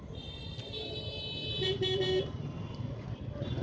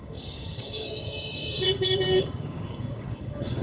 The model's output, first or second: second